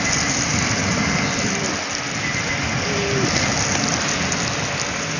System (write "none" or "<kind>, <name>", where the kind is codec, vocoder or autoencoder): none